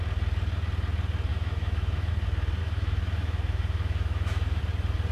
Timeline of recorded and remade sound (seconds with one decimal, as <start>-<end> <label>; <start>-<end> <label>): 0.0-1.3 recorded; 1.3-2.1 remade; 2.1-2.6 recorded; 2.6-4.6 remade; 4.6-5.1 recorded